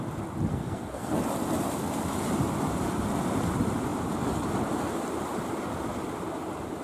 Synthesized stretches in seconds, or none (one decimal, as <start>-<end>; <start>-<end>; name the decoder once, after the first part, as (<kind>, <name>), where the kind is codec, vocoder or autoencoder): 0.5-1.2 (codec, SNAC)